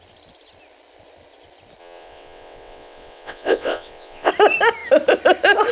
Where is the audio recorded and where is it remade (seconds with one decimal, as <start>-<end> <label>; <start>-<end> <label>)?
0.0-1.8 recorded; 1.8-4.3 remade; 4.3-5.7 recorded